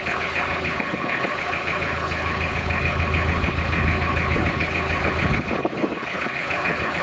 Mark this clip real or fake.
fake